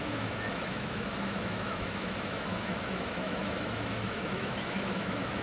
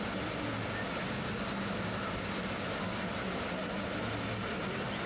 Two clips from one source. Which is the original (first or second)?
second